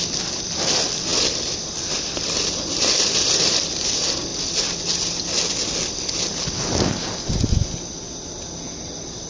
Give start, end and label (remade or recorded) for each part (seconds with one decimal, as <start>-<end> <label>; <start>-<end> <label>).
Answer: 0.0-9.3 recorded